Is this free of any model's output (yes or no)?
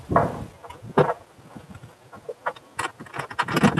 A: yes